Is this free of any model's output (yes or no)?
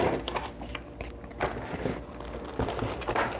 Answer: yes